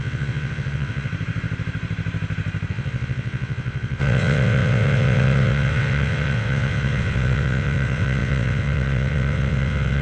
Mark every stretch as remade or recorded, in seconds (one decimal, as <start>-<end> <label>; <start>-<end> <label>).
0.0-1.1 remade; 1.1-2.7 recorded; 2.7-10.0 remade